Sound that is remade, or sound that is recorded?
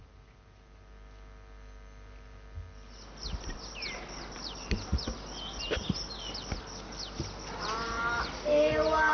recorded